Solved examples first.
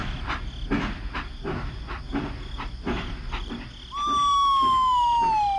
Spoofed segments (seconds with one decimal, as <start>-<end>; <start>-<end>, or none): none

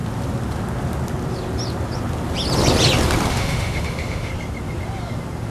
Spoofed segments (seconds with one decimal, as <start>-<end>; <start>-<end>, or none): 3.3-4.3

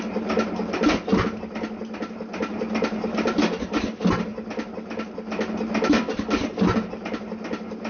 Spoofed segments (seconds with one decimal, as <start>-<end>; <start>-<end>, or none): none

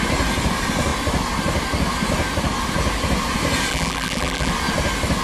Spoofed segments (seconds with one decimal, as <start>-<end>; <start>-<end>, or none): 3.7-4.5